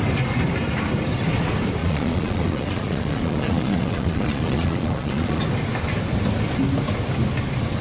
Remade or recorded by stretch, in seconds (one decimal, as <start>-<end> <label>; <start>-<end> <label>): 0.0-1.8 recorded; 1.8-5.4 remade; 5.4-7.8 recorded